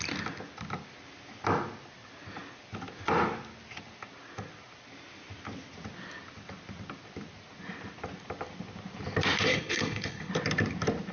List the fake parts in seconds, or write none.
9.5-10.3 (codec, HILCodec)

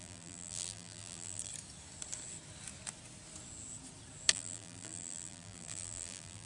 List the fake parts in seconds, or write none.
0.0-1.5 (vocoder, BigVGAN v2); 4.3-6.5

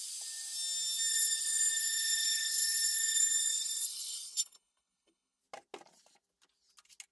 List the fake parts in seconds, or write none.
1.1-5.4 (codec, HILCodec)